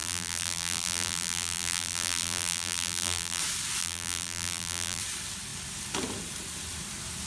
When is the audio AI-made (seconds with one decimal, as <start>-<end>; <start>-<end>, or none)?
0.0-3.4; 3.8-5.0